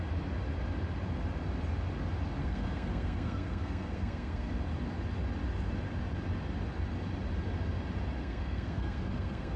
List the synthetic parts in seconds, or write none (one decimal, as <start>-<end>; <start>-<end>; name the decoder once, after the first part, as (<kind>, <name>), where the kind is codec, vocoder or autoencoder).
2.4-4.5 (codec, SNAC); 8.2-9.6